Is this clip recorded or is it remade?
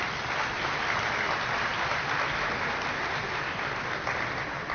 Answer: recorded